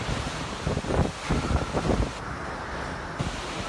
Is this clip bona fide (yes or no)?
yes